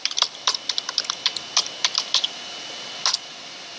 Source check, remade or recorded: recorded